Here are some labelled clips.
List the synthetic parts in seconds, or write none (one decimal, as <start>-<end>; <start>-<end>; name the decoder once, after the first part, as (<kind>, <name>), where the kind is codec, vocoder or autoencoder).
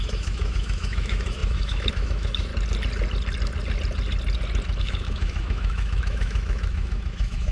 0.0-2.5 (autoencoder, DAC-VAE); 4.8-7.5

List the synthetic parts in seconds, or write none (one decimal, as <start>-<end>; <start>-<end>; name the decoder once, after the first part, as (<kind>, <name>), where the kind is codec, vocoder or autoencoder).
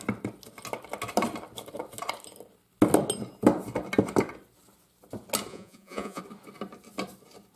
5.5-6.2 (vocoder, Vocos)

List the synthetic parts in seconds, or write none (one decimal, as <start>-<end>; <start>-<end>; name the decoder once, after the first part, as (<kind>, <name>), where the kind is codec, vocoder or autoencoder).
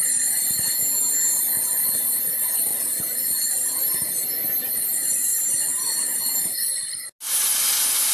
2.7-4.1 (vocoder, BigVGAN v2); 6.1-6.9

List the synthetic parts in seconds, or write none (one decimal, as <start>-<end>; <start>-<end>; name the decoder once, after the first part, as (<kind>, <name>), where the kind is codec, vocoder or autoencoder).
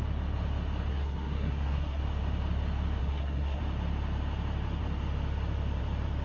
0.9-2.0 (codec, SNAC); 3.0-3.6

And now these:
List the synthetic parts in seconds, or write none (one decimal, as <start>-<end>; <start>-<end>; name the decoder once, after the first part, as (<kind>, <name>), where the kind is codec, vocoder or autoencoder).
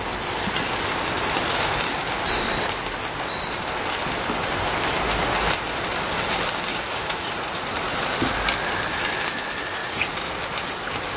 6.7-7.8 (vocoder, Vocos); 9.8-10.4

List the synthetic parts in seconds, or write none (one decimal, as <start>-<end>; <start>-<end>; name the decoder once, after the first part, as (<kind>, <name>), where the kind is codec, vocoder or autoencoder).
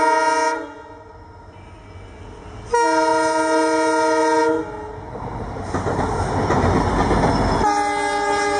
none